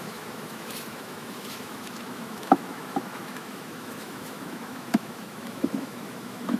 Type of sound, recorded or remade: remade